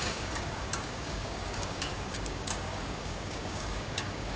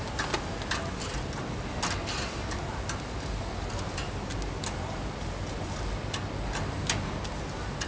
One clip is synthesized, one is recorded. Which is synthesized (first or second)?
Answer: first